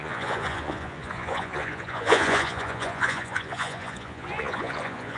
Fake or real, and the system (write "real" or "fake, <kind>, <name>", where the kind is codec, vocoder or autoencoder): fake, vocoder, Vocos